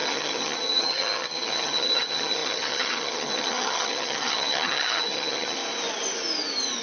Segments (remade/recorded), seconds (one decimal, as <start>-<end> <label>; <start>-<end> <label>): 0.0-5.6 remade; 5.6-6.8 recorded